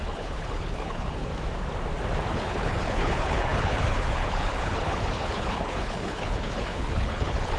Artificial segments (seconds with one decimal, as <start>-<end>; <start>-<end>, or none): 0.0-1.3; 2.3-7.6